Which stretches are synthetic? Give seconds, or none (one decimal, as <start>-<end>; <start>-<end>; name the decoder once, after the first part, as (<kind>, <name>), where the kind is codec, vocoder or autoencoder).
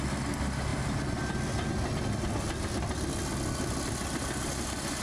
none